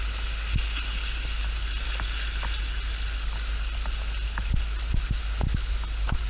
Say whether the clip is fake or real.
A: real